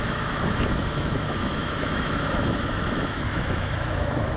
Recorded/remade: remade